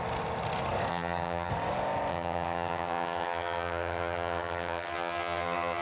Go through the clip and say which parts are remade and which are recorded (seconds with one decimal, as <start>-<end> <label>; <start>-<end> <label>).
0.0-0.9 recorded; 0.9-1.5 remade; 1.5-2.1 recorded; 2.1-5.8 remade